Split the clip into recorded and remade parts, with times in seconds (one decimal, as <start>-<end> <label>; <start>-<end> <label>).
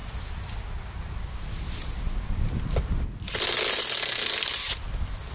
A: 0.0-5.3 recorded